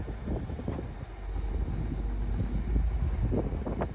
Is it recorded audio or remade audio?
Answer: recorded